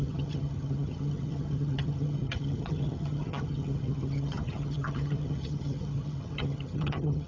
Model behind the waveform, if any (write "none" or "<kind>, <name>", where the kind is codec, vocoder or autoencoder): vocoder, HiFi-GAN